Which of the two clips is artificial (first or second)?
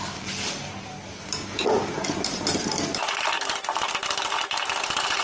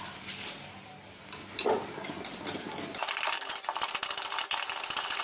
second